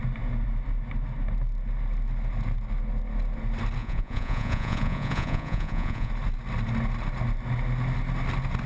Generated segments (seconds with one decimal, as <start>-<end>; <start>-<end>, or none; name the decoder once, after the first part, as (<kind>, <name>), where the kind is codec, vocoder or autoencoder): 3.8-6.1 (vocoder, Vocos)